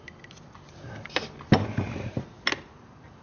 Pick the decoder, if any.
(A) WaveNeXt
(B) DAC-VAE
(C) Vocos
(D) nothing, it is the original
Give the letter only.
D